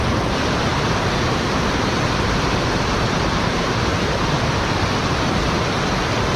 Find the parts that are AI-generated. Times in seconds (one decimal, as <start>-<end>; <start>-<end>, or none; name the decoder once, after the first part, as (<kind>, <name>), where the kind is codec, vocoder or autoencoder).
0.7-3.7 (vocoder, BigVGAN v2); 5.0-6.0